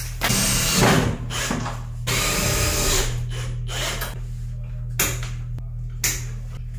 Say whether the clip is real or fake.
real